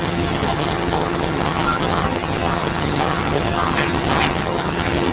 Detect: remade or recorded remade